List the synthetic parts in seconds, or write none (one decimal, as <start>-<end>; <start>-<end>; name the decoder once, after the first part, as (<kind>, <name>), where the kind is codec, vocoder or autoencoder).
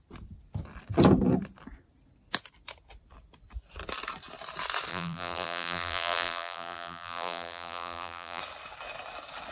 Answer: 4.9-8.4 (vocoder, BigVGAN v2)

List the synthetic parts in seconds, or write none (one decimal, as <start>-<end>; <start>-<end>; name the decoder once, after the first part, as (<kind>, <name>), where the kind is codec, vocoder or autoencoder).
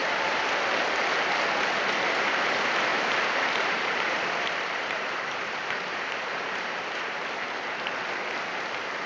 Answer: 0.0-0.8 (vocoder, BigVGAN v2); 2.9-7.2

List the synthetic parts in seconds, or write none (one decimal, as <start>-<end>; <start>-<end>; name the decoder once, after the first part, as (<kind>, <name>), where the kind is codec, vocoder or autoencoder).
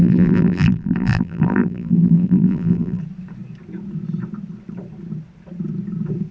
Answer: 0.0-3.0 (vocoder, BigVGAN v2)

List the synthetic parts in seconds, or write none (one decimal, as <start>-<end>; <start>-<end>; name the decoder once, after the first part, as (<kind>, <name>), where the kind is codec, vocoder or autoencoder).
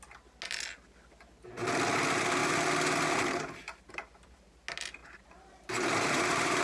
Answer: 5.0-6.6 (vocoder, BigVGAN v2)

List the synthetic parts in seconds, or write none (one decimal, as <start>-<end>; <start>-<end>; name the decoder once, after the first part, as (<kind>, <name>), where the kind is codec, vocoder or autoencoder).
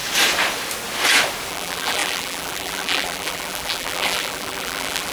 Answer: 1.5-5.1 (vocoder, BigVGAN v2)